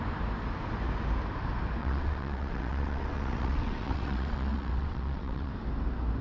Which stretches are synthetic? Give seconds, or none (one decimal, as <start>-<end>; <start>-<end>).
1.8-5.5